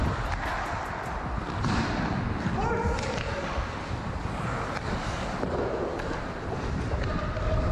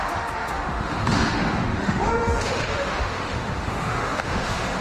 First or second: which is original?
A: first